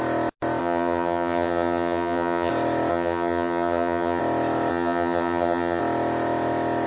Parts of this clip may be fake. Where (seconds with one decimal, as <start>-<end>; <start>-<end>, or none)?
0.6-2.5; 2.9-4.2; 4.7-5.8